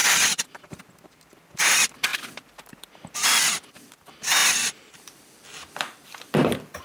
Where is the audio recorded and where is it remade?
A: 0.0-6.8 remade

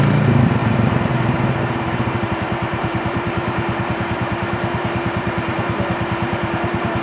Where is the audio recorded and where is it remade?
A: 0.0-7.0 remade

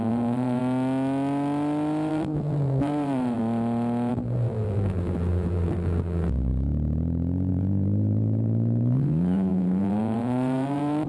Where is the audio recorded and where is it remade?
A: 0.0-0.6 remade; 0.6-2.1 recorded; 2.1-3.4 remade; 3.4-4.1 recorded; 4.1-6.5 remade; 6.5-7.5 recorded; 7.5-11.1 remade

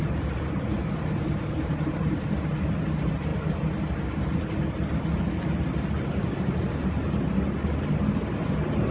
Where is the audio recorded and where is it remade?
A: 0.0-0.7 recorded; 0.7-2.2 remade; 2.2-8.9 recorded

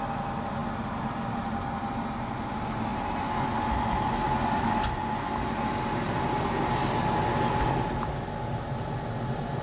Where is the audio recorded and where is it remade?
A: 0.0-9.6 recorded

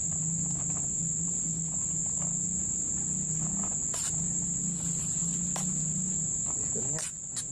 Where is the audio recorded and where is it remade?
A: 0.0-7.5 recorded

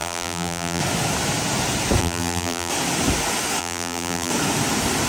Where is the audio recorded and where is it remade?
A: 0.0-0.8 remade; 0.8-2.0 recorded; 2.0-2.7 remade; 2.7-3.6 recorded; 3.6-4.3 remade; 4.3-5.1 recorded

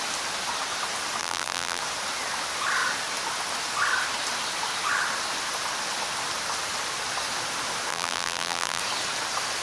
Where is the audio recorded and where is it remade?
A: 0.0-1.2 recorded; 1.2-1.8 remade; 1.8-7.9 recorded; 7.9-8.8 remade; 8.8-9.6 recorded